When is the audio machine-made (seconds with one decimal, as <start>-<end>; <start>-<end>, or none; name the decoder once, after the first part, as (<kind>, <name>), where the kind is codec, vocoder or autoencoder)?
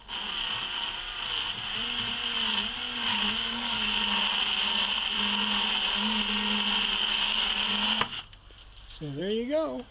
3.1-4.0 (codec, DAC); 7.0-7.5; 8.6-9.2